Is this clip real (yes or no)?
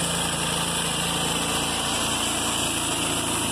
yes